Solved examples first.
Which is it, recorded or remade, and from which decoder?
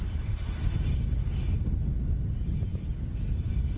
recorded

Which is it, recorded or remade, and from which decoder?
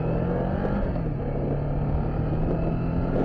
recorded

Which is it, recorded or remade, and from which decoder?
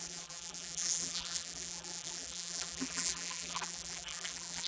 remade, vocoder, BigVGAN v2